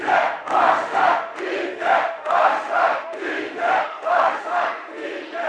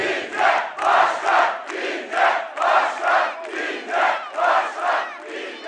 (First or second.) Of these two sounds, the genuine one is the second